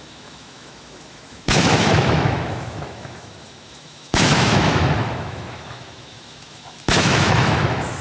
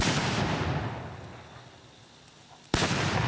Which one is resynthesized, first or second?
first